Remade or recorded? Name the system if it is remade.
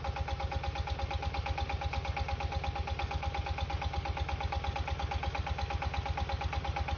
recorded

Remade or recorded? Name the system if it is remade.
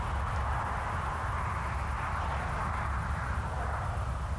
recorded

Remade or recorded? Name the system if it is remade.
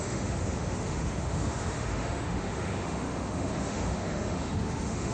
remade, autoencoder, DAC-VAE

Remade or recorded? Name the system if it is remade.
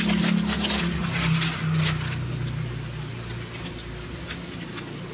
recorded